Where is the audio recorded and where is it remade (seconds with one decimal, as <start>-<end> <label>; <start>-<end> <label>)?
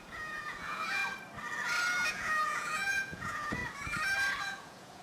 0.0-1.0 remade; 1.0-2.1 recorded; 2.1-3.6 remade; 3.6-4.4 recorded; 4.4-5.0 remade